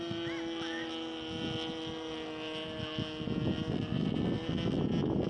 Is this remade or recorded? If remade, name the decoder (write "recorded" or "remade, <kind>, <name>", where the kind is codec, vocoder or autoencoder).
recorded